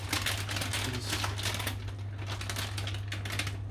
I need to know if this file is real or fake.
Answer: real